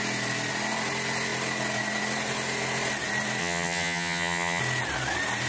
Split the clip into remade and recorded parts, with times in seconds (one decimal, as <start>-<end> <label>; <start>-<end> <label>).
0.0-3.4 recorded; 3.4-4.6 remade; 4.6-5.5 recorded